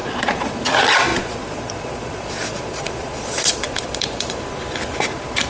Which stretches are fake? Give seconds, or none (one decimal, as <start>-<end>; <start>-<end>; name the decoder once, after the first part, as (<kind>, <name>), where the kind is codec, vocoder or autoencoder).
0.0-0.6 (vocoder, Vocos); 1.1-4.4